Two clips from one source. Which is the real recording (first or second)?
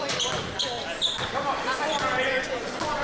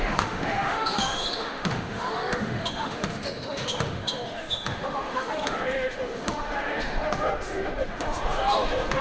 first